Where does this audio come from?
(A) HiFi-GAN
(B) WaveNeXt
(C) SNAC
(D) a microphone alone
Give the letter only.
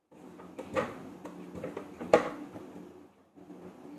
D